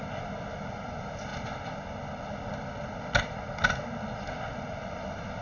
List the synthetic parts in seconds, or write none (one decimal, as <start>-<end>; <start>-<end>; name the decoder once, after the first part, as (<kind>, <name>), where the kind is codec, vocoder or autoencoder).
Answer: none

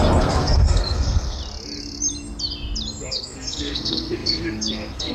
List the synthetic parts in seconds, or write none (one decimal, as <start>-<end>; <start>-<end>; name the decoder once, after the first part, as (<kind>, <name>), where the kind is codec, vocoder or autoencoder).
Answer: 0.0-1.4 (codec, SNAC); 3.1-5.1

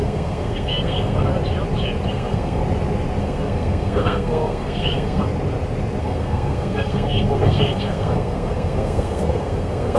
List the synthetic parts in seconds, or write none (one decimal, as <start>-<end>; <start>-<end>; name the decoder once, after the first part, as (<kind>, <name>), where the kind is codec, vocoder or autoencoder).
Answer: 0.0-1.3 (codec, SNAC); 2.1-2.6; 3.2-5.3; 6.0-10.0